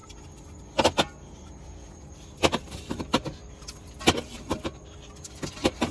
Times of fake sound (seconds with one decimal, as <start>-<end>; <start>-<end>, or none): none